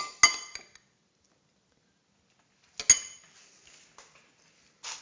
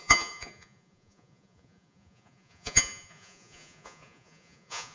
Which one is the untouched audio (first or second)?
first